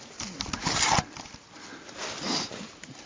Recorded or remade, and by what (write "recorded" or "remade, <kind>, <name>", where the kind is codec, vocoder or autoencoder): recorded